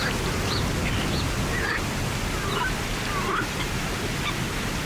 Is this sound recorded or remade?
recorded